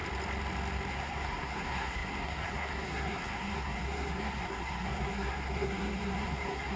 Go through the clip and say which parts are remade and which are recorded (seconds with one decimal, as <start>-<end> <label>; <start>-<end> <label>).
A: 0.0-0.9 recorded; 0.9-6.8 remade